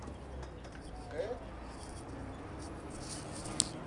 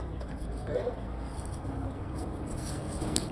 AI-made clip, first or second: second